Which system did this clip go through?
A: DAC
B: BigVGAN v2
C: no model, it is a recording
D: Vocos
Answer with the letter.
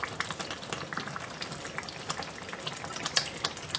C